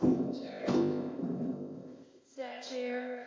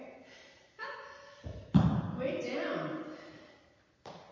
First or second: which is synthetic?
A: first